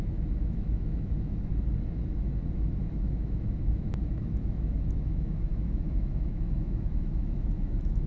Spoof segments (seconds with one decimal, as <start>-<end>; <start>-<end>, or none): 0.0-1.5; 2.8-8.1